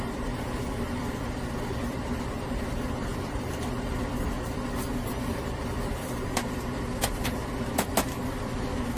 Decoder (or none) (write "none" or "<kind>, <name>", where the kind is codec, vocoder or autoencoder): vocoder, BigVGAN v2